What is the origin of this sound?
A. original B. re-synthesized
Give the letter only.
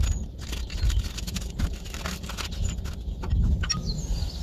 A